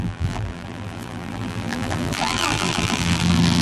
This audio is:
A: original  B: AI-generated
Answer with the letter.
B